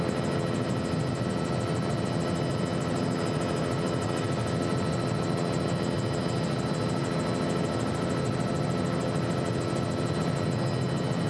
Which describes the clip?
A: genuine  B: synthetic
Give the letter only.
A